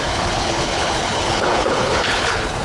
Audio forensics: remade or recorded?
remade